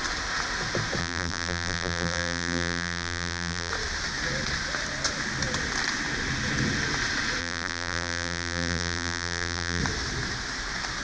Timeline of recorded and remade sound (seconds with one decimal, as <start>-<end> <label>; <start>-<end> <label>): 0.0-1.0 recorded; 1.0-3.7 remade; 3.7-7.4 recorded; 7.4-9.8 remade; 9.8-11.0 recorded